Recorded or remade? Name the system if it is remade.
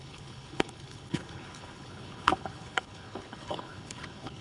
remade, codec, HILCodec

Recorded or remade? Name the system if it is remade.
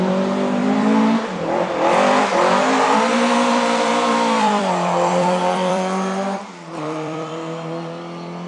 remade, vocoder, BigVGAN v2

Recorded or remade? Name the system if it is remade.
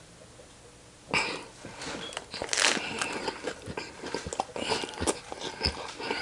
recorded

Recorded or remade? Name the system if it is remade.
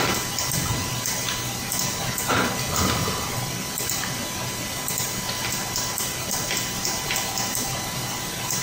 recorded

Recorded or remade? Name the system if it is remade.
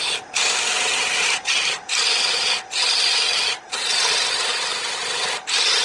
recorded